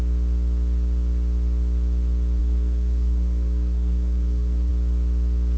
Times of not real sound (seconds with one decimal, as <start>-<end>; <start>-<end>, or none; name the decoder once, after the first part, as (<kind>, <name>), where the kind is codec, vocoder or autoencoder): 2.4-4.7 (codec, SNAC)

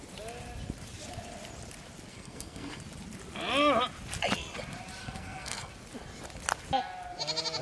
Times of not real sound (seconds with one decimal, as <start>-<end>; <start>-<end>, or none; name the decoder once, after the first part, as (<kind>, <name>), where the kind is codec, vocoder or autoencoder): 2.1-2.8 (codec, SNAC); 5.0-5.7

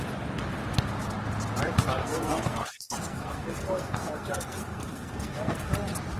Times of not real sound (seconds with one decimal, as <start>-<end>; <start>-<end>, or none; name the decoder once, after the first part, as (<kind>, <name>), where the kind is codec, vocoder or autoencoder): 2.0-5.7 (codec, SNAC)

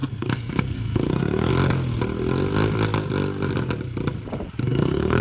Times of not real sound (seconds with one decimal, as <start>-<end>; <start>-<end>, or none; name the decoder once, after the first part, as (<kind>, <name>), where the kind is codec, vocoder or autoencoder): 0.0-1.5 (codec, SNAC); 4.6-5.2

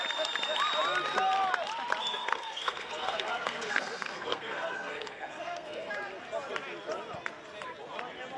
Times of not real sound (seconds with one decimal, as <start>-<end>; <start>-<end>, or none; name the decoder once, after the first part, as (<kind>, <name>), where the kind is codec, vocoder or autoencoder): 2.0-5.9 (codec, SNAC)

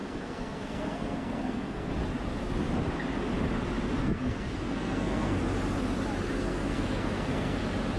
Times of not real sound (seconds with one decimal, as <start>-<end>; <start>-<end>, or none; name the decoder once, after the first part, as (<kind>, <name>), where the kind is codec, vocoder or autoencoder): 0.0-1.9 (codec, SNAC); 4.0-5.4; 6.4-7.6

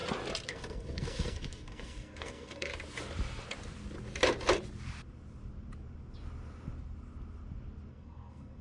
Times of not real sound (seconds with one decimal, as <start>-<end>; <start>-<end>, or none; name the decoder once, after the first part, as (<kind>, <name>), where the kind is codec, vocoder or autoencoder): 0.5-2.7 (codec, SNAC); 7.9-8.6

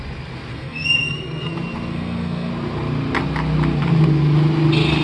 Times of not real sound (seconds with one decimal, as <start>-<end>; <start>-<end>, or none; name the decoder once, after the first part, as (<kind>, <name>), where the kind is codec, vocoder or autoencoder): 0.5-1.5 (codec, SNAC); 1.9-2.5